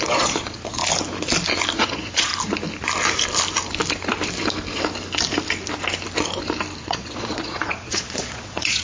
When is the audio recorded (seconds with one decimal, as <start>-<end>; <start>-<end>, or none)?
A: 0.8-1.7; 2.3-6.8